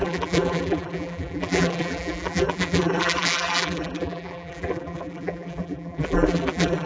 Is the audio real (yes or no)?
no